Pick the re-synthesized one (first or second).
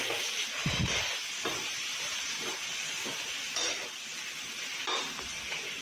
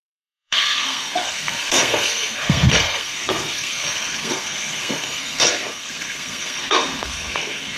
second